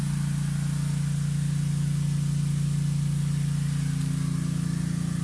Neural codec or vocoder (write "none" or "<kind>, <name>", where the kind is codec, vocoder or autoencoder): none